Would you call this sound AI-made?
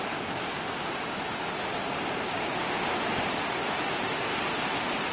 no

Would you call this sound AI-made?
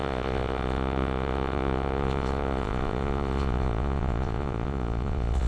yes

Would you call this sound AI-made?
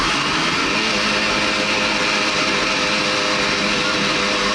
no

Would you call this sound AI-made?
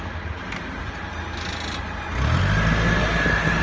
no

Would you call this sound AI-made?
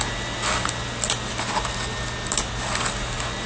no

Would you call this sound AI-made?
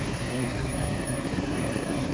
yes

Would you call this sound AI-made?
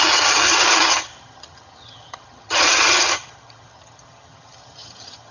yes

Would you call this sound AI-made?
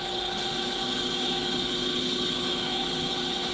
yes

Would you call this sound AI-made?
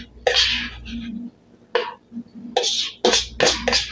no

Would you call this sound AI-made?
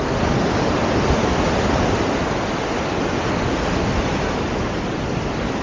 no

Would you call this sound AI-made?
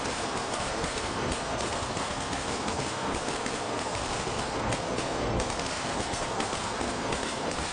yes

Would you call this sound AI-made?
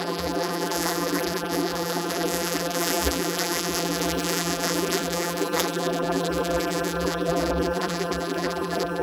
yes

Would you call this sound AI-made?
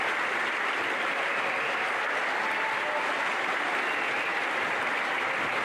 no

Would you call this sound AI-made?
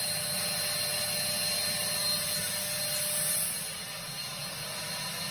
no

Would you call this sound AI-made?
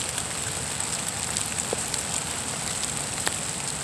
no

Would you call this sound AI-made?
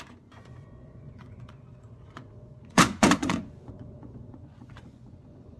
yes